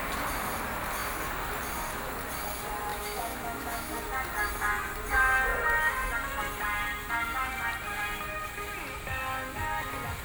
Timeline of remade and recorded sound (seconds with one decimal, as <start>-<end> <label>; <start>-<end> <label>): 0.0-2.9 recorded; 2.9-3.9 remade; 3.9-10.2 recorded